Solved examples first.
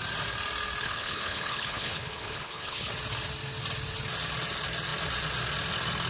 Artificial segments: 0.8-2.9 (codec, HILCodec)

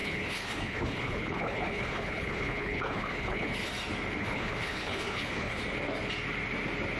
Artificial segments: 0.0-3.7 (codec, HILCodec); 4.2-5.6

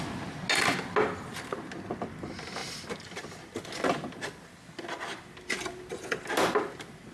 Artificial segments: none